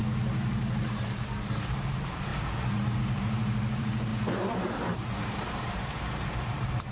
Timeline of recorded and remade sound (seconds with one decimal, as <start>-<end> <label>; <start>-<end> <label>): 0.0-0.8 recorded; 0.8-2.3 remade; 2.3-3.2 recorded; 3.2-6.9 remade